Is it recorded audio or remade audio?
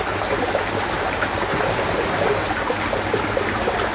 recorded